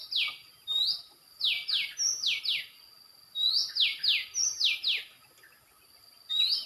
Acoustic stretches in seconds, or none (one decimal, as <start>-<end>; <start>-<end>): 0.0-6.7